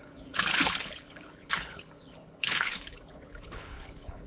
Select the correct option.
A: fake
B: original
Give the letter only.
A